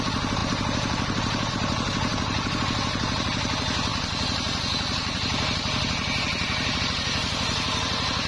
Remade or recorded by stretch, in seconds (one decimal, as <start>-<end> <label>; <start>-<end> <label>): 0.0-2.1 recorded; 2.1-2.6 remade; 2.6-8.3 recorded